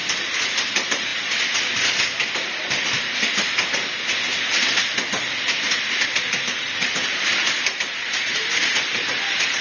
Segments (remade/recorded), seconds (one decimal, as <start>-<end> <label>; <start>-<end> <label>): 0.0-0.7 recorded; 0.7-1.1 remade; 1.1-6.2 recorded; 6.2-9.6 remade